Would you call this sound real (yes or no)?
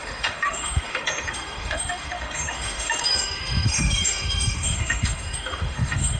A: no